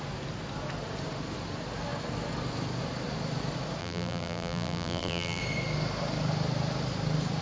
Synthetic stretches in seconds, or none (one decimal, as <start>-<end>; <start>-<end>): 3.8-5.4